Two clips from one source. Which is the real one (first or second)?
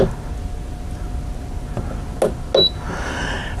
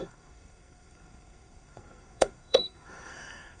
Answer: first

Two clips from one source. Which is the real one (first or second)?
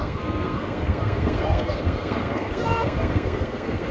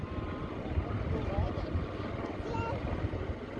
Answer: second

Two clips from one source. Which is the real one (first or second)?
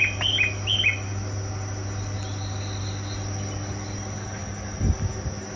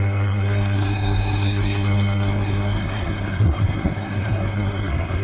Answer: first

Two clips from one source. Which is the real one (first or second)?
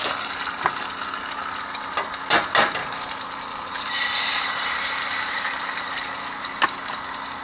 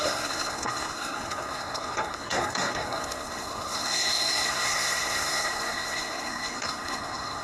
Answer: first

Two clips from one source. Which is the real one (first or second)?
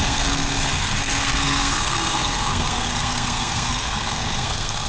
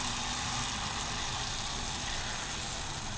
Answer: second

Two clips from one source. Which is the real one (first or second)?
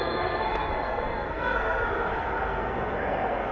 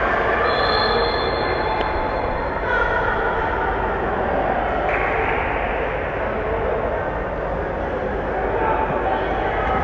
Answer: second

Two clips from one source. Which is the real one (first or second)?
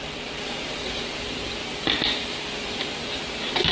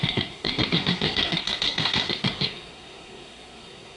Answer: first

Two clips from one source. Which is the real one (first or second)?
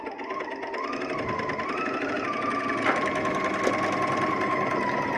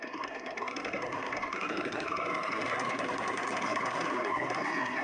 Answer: first